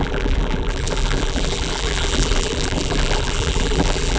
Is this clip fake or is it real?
fake